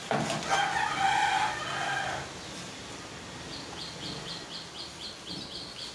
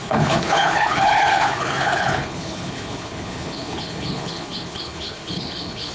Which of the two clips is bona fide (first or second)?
first